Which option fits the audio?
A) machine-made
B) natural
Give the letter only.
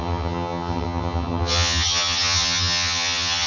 A